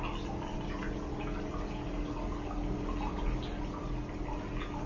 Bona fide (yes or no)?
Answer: yes